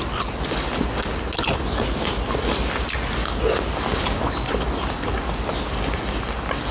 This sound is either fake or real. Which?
real